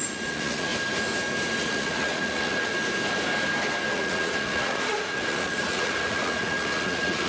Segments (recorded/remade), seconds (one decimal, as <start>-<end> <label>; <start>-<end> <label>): 0.0-0.7 remade; 0.7-1.6 recorded; 1.6-2.7 remade; 2.7-3.9 recorded; 3.9-7.3 remade